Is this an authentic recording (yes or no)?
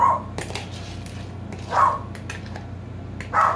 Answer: yes